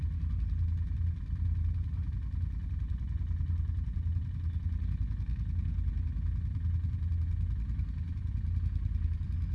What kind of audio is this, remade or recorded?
recorded